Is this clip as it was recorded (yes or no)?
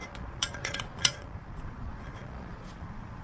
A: no